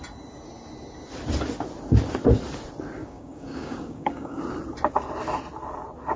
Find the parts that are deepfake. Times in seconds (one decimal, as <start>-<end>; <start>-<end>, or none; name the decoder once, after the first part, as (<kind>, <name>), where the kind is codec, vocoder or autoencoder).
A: 3.0-4.4 (codec, DAC)